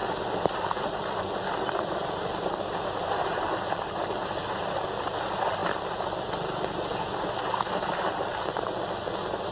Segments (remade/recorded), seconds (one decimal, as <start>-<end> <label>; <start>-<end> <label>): 0.0-9.5 recorded